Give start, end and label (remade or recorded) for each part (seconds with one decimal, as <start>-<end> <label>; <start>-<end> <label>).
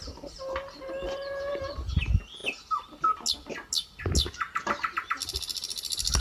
0.0-6.2 recorded